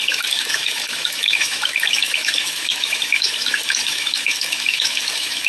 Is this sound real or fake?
fake